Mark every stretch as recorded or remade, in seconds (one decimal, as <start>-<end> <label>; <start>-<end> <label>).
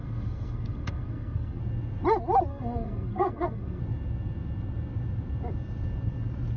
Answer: 0.0-1.6 remade; 1.6-2.5 recorded; 2.5-3.8 remade; 3.8-6.6 recorded